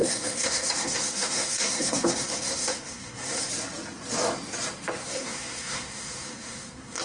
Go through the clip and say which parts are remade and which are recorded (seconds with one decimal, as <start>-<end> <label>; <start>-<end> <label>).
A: 0.0-3.5 remade; 3.5-5.0 recorded; 5.0-7.0 remade